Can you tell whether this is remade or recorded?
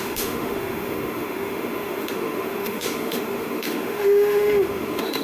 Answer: remade